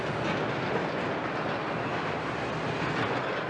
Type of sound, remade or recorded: recorded